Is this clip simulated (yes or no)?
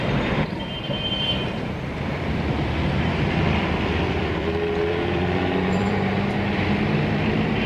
yes